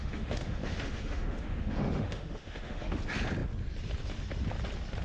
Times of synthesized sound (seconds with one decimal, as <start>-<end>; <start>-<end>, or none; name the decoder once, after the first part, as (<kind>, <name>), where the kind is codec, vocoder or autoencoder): 0.0-3.0 (autoencoder, DAC-VAE)